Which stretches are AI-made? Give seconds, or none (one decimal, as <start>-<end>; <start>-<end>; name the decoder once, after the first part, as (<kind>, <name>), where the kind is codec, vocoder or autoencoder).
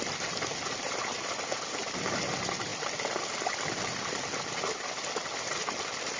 none